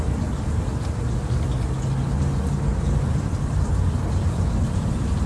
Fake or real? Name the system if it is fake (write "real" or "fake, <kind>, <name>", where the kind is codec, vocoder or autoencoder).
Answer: real